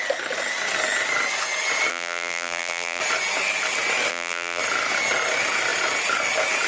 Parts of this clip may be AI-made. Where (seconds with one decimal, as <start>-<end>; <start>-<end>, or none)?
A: 1.9-3.0; 4.1-4.6